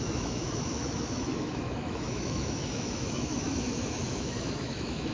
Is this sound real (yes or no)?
no